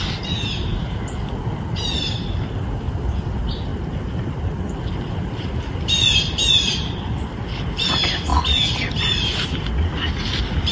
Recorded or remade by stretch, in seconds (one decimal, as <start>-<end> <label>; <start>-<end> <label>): 0.0-10.7 recorded